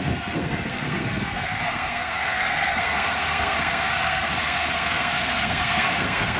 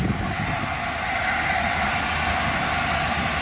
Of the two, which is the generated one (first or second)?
first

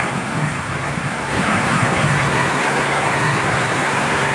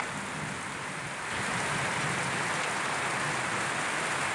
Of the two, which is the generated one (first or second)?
first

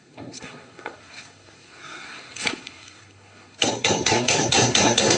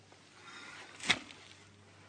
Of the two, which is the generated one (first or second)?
first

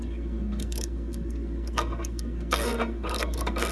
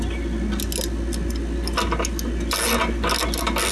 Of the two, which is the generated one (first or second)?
first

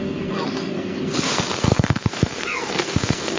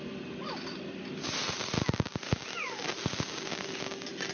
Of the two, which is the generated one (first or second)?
first